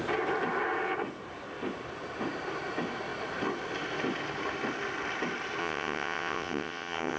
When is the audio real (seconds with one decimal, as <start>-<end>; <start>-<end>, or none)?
0.0-5.6